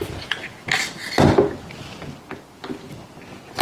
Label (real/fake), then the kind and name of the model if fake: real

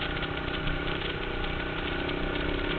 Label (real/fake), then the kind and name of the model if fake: real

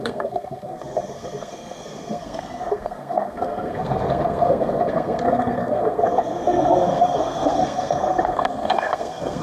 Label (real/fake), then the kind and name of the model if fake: fake, codec, SNAC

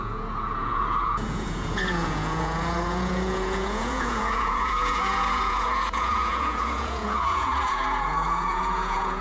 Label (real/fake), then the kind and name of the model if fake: fake, vocoder, Vocos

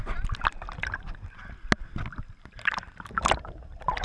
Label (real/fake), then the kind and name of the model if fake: real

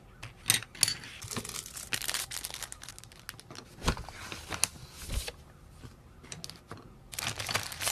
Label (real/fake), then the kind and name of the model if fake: real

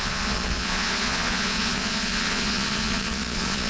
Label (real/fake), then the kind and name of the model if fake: fake, vocoder, Vocos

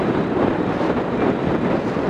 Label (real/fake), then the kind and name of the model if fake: fake, vocoder, BigVGAN v2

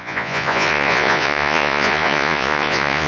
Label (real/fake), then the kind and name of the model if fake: fake, vocoder, Vocos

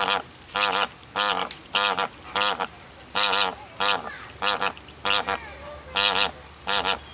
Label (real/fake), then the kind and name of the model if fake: real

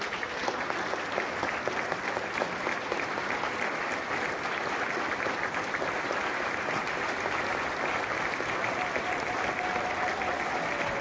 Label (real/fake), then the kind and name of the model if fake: real